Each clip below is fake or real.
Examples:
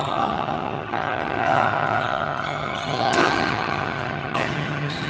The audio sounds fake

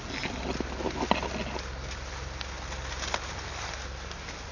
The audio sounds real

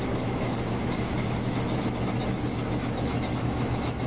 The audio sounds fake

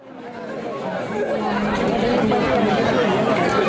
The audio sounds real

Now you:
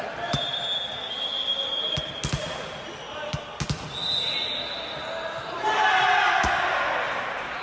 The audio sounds real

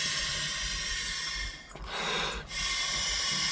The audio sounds real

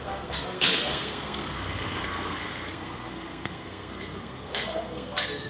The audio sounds fake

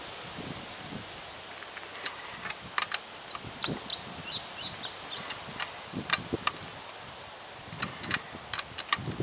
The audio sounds real